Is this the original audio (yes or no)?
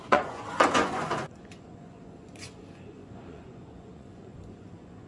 no